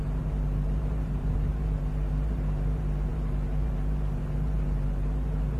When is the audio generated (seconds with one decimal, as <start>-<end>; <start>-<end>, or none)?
0.0-5.6